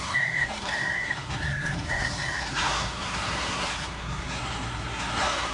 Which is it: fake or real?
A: fake